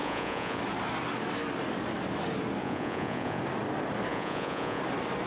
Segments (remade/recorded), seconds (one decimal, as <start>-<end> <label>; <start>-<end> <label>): 0.0-0.6 remade; 0.6-2.6 recorded; 2.6-3.4 remade; 3.4-4.1 recorded; 4.1-4.8 remade; 4.8-5.3 recorded